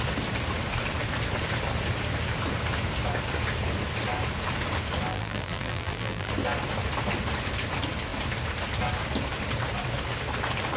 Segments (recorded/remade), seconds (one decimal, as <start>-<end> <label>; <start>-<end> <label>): 0.0-5.1 recorded; 5.1-6.3 remade; 6.3-10.8 recorded